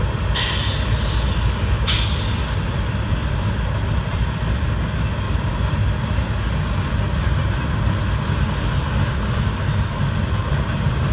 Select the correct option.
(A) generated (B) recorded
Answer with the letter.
B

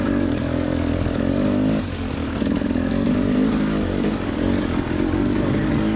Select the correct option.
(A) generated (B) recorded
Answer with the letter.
A